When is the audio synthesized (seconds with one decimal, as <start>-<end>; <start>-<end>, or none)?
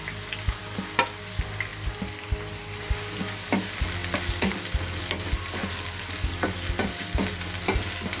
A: none